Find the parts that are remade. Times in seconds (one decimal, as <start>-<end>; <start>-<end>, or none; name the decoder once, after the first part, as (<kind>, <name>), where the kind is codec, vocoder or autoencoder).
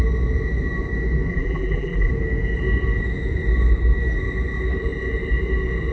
1.3-2.1 (vocoder, BigVGAN v2)